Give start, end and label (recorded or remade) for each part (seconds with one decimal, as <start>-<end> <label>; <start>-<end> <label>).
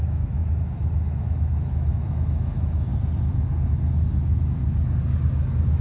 0.0-2.9 remade; 2.9-3.9 recorded; 3.9-4.6 remade; 4.6-5.8 recorded